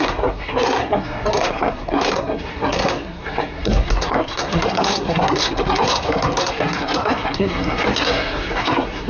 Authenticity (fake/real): fake